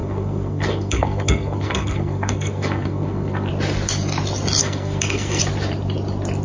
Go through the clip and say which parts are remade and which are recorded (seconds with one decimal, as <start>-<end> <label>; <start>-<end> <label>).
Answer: 0.0-3.5 remade; 3.5-4.6 recorded; 4.6-5.4 remade; 5.4-6.4 recorded